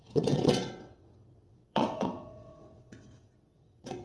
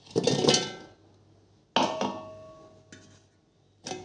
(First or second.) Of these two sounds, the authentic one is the second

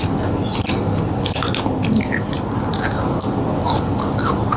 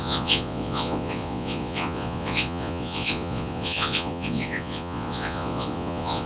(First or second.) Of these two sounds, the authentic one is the first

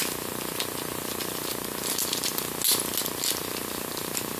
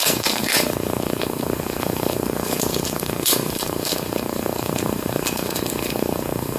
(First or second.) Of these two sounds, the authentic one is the first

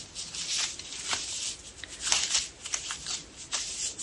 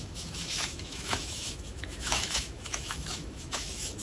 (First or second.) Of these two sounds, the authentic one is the first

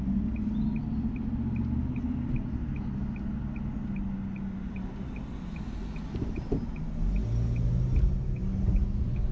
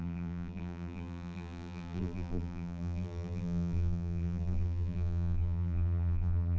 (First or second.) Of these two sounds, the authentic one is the first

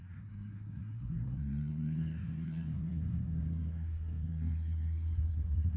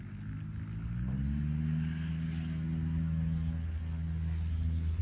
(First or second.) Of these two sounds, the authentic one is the second